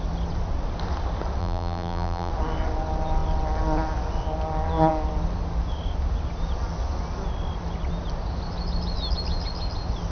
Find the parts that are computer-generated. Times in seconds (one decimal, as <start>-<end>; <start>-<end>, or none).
1.4-2.3